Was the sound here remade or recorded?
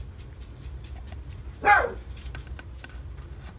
recorded